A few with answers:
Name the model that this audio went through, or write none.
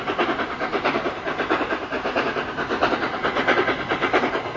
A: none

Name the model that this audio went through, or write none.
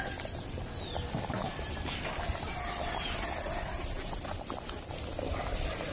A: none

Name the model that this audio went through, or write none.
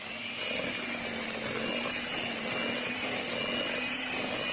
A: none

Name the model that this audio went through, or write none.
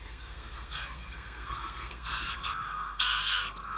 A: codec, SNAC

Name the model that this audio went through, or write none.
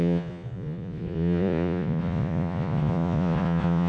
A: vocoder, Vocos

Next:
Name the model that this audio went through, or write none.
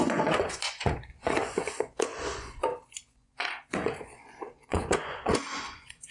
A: vocoder, Vocos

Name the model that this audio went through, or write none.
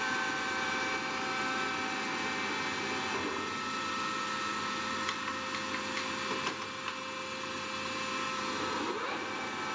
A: none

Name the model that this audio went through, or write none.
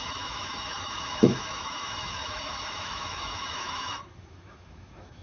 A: autoencoder, DAC-VAE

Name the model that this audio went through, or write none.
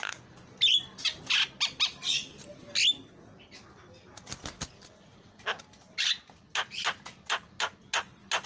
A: none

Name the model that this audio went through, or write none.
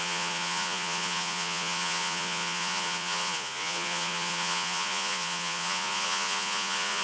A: vocoder, Vocos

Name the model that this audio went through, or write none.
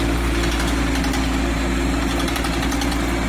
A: none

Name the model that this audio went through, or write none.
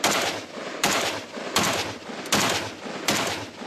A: none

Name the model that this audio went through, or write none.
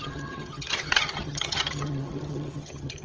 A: vocoder, HiFi-GAN